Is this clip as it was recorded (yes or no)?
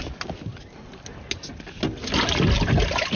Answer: yes